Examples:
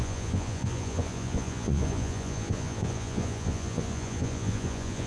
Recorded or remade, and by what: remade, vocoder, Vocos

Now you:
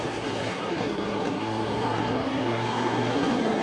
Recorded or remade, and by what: remade, codec, SNAC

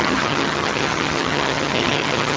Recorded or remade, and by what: remade, vocoder, HiFi-GAN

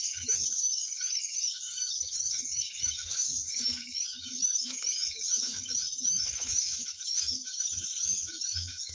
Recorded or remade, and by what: remade, autoencoder, DAC-VAE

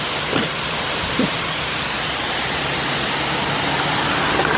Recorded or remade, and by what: recorded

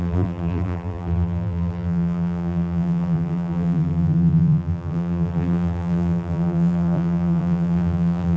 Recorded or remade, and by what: remade, vocoder, BigVGAN v2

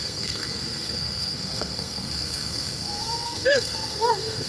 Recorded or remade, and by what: remade, codec, SNAC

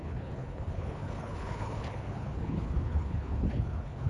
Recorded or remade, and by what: remade, codec, HILCodec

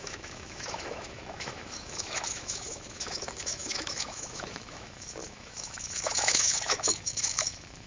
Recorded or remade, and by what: remade, autoencoder, DAC-VAE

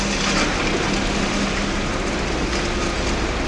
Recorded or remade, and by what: recorded